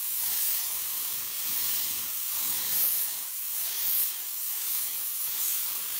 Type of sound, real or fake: fake